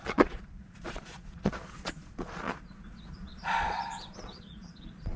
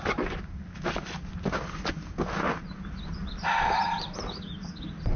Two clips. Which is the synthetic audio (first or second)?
first